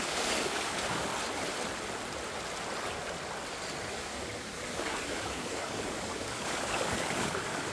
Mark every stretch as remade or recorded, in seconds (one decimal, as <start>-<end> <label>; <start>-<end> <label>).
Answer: 0.0-1.1 remade; 1.1-3.9 recorded; 3.9-7.7 remade